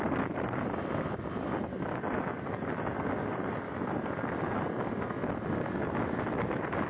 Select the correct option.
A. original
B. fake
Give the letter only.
A